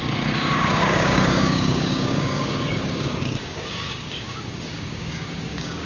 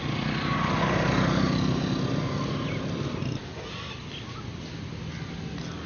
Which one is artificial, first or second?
first